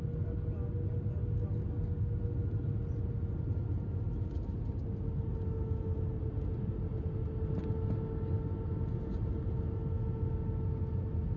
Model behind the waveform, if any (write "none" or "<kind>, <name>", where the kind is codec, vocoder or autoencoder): none